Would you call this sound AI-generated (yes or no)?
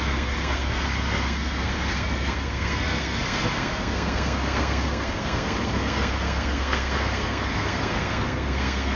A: yes